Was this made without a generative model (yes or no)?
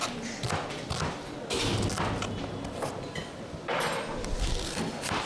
yes